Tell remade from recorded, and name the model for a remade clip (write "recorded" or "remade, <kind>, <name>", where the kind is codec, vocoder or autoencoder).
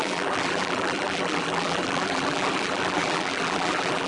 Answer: remade, vocoder, BigVGAN v2